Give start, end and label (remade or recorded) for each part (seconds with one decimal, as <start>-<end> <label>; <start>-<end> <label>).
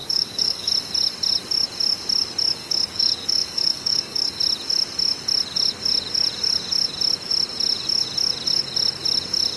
0.0-0.7 remade; 0.7-2.6 recorded; 2.6-4.3 remade; 4.3-9.6 recorded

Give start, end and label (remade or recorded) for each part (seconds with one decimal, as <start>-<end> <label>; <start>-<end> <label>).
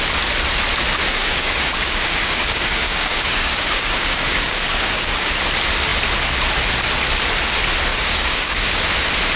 0.0-1.0 recorded; 1.0-5.3 remade; 5.3-7.9 recorded; 7.9-8.8 remade; 8.8-9.4 recorded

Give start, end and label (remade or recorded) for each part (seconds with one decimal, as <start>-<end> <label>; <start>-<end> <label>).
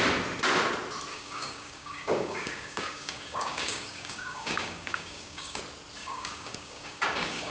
0.0-1.1 recorded; 1.1-5.6 remade; 5.6-6.0 recorded; 6.0-7.5 remade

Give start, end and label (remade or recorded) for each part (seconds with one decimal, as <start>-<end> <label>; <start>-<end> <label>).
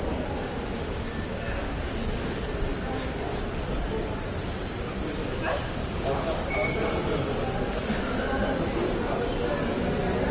0.0-5.8 recorded; 5.8-6.5 remade; 6.5-10.3 recorded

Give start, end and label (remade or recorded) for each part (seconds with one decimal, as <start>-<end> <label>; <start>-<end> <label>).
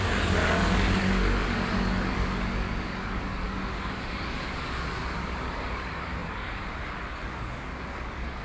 0.0-8.4 remade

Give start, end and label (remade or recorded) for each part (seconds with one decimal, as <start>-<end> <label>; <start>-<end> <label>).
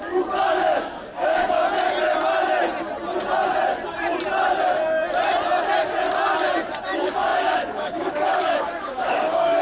0.0-1.6 remade; 1.6-6.8 recorded; 6.8-9.6 remade